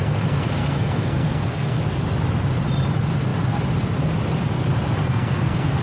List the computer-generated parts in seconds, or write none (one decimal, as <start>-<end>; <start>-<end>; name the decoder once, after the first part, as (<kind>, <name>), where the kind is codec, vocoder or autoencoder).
0.0-1.8 (codec, SNAC); 5.0-5.8